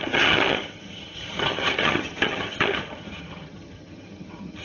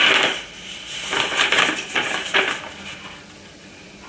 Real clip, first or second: second